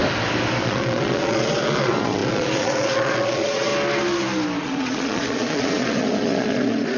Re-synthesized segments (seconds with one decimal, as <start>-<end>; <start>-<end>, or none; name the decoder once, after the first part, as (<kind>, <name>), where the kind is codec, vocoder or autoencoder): 0.6-3.7 (vocoder, Vocos); 4.6-7.0